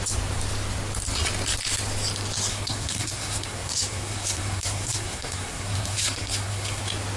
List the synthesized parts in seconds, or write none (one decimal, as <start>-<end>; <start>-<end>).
2.5-6.8